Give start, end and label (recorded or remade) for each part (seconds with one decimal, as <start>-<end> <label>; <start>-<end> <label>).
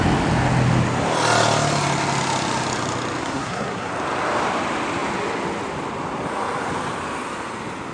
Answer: 0.0-3.2 recorded; 3.2-3.9 remade; 3.9-7.9 recorded